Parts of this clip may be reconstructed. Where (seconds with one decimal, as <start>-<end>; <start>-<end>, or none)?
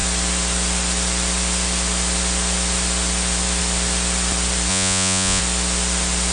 4.7-5.4